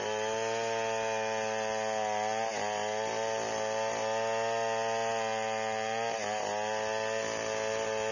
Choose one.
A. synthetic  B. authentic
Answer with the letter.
B